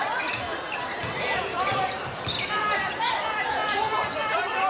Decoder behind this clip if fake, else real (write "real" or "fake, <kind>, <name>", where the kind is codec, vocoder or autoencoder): real